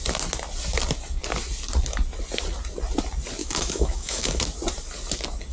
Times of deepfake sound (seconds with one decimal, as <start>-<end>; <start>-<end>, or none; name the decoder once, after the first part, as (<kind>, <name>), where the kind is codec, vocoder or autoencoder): 3.4-4.4 (autoencoder, DAC-VAE)